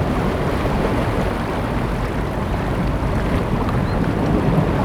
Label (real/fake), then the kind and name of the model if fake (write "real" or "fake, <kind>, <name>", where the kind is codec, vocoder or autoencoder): real